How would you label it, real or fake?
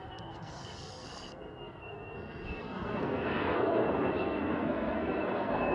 fake